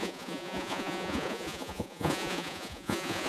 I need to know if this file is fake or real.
fake